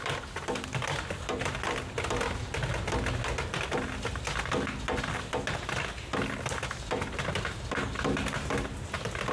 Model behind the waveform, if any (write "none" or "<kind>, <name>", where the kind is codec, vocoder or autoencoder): none